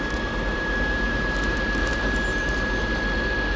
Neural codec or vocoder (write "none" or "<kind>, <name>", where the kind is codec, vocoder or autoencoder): vocoder, BigVGAN v2